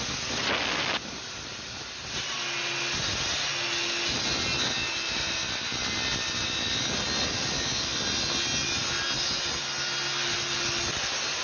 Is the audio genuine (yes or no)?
yes